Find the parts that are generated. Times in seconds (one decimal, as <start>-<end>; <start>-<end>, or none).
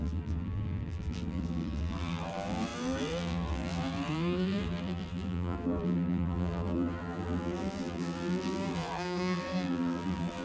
0.0-10.4